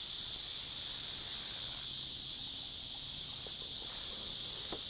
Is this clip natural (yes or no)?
yes